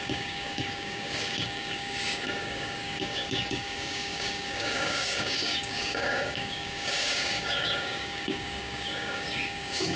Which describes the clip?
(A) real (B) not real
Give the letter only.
B